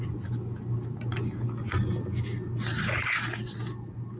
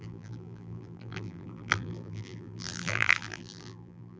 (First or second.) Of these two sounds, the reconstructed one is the second